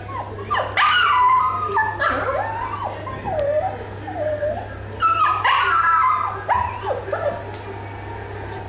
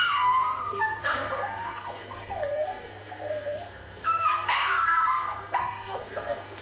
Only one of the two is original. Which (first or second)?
first